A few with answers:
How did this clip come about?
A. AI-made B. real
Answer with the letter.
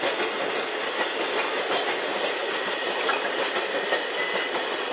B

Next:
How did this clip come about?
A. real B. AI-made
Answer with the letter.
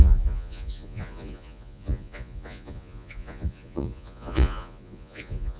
B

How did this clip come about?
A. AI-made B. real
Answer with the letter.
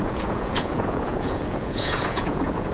A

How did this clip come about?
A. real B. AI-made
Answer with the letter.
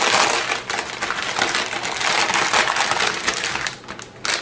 A